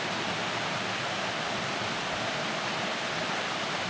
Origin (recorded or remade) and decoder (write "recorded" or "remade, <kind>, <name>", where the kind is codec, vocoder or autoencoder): recorded